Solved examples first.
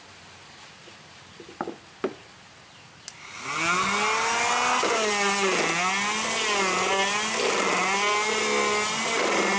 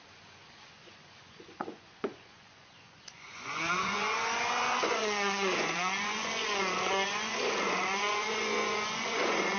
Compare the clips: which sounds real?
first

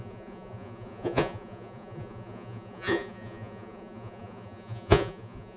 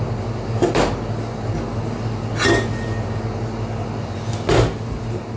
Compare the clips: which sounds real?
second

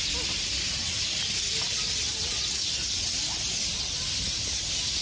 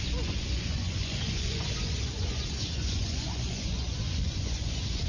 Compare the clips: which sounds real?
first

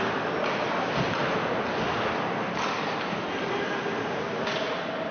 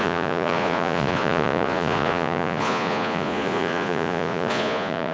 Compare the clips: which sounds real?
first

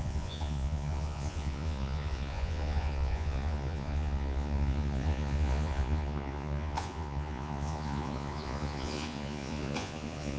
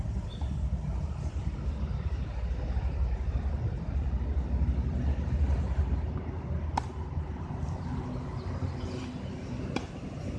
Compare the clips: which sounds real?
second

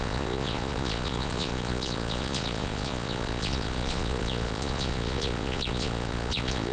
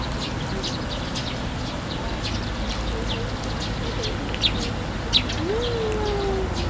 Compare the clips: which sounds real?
second